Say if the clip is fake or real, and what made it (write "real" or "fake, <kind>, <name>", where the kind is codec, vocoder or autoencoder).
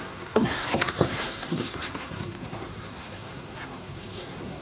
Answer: fake, codec, SNAC